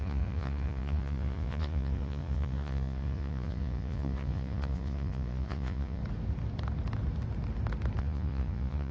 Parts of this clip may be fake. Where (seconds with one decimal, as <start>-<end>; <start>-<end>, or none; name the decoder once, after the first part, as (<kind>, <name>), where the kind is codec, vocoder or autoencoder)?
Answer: 0.0-6.0 (vocoder, Vocos); 8.0-8.9

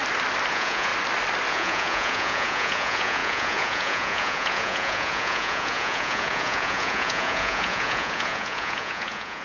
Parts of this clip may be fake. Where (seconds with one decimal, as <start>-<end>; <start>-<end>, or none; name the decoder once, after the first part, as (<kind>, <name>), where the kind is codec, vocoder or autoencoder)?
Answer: 0.5-0.9 (vocoder, Vocos); 1.5-9.4